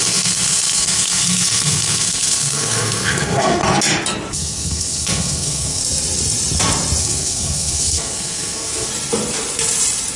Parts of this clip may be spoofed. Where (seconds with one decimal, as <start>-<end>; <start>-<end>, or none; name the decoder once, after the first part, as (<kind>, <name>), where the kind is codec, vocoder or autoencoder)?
0.0-3.6 (codec, SNAC); 4.3-5.8; 7.0-8.9